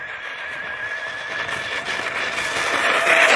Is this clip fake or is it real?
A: real